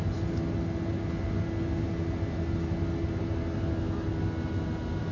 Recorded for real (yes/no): yes